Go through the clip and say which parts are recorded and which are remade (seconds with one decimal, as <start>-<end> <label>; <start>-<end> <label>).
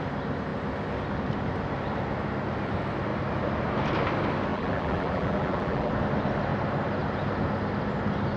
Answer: 0.0-4.5 recorded; 4.5-5.9 remade; 5.9-8.4 recorded